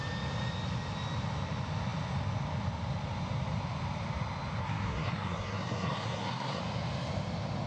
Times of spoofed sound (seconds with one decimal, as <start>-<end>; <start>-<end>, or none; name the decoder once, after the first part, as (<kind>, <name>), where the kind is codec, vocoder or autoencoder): 4.6-6.6 (codec, SNAC)